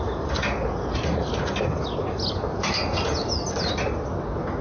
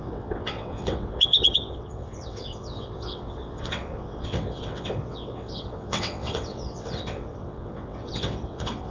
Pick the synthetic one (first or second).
second